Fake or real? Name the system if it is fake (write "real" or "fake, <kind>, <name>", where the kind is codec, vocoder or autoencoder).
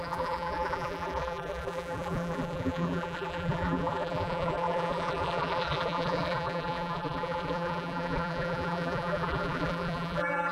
fake, vocoder, BigVGAN v2